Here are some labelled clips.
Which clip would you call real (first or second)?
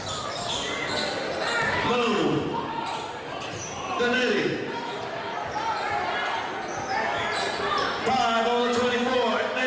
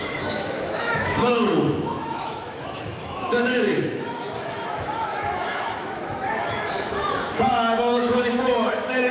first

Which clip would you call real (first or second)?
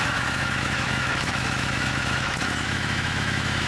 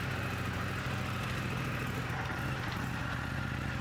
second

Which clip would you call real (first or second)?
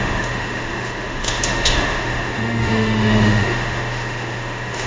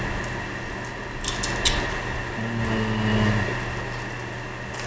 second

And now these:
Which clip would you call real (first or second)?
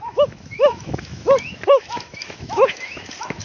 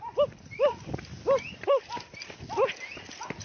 second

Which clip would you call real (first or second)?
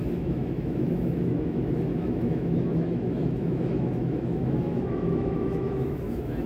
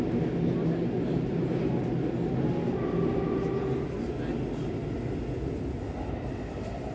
second